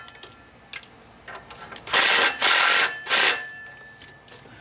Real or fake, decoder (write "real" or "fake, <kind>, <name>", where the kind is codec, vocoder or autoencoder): real